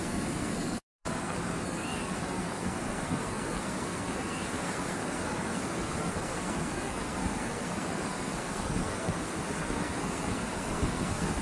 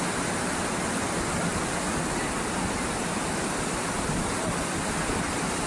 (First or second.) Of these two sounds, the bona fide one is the second